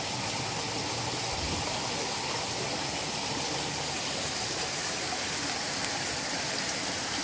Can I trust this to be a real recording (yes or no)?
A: yes